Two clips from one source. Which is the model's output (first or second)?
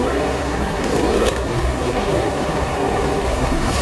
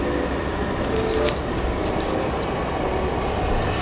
first